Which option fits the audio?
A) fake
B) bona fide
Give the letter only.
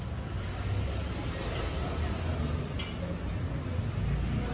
B